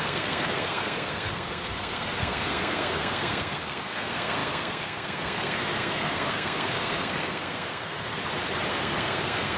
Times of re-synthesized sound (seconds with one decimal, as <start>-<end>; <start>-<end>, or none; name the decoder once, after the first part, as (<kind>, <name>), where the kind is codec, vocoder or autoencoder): 0.0-8.2 (codec, SNAC); 8.7-9.6

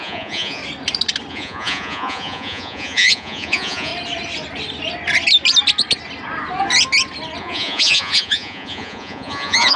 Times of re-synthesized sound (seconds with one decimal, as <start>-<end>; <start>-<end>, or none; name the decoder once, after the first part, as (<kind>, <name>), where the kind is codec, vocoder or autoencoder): 0.0-0.6 (vocoder, Vocos); 1.3-3.9; 7.4-9.8